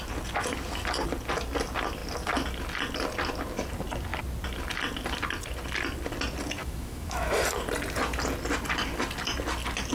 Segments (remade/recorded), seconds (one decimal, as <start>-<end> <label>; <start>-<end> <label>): 0.0-6.6 recorded; 6.6-7.3 remade; 7.3-9.9 recorded